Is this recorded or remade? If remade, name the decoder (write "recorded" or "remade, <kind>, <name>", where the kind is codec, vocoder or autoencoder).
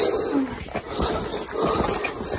recorded